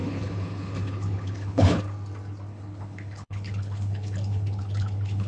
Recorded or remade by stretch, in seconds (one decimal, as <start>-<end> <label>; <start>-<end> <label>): 0.0-1.8 remade; 1.8-2.5 recorded; 2.5-5.3 remade